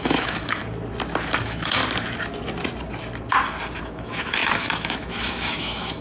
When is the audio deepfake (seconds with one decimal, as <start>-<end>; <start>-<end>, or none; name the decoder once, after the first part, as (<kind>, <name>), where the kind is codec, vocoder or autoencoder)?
0.0-0.6 (autoencoder, DAC-VAE); 1.4-1.8; 3.8-6.0